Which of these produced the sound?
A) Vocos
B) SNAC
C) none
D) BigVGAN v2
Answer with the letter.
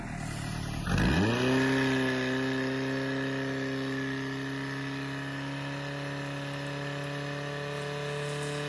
C